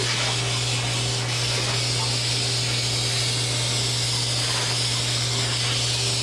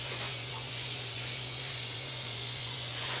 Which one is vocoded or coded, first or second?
second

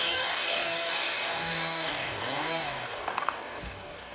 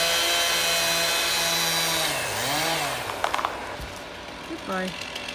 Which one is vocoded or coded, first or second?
first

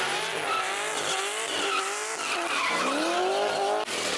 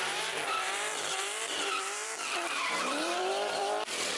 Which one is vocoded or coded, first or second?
second